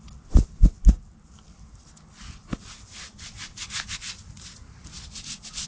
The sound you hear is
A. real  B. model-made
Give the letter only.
A